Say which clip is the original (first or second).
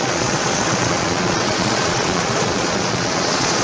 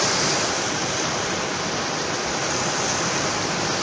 second